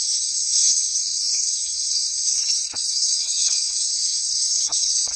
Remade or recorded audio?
remade